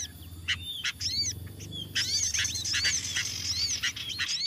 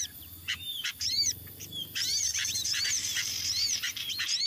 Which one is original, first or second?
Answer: first